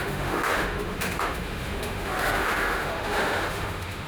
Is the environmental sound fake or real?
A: fake